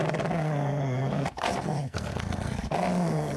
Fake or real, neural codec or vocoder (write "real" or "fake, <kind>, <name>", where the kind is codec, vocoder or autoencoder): fake, codec, SNAC